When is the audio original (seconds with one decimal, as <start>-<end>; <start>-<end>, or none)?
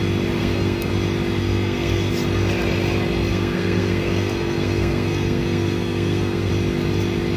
0.0-0.4; 0.9-1.4; 2.1-3.3; 6.5-7.4